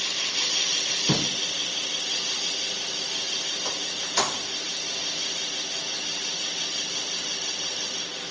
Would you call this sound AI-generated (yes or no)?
no